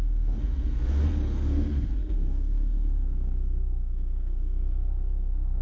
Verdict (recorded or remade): remade